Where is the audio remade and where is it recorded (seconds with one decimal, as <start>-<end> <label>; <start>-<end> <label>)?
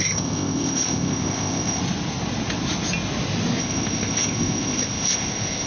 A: 0.0-1.8 remade; 1.8-3.6 recorded; 3.6-5.7 remade